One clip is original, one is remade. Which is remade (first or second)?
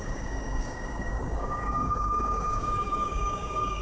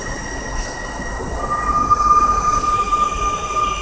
first